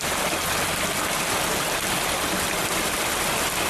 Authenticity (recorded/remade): recorded